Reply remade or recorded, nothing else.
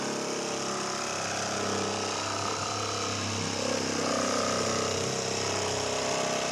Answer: recorded